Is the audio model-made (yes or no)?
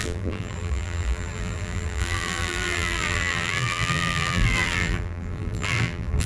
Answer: yes